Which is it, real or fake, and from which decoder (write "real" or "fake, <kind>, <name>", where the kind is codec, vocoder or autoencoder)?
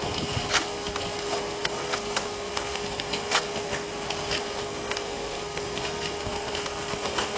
fake, codec, SNAC